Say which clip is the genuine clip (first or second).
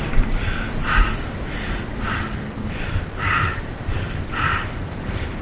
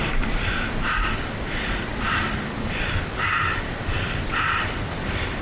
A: first